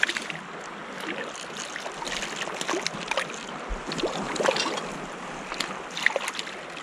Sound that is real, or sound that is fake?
real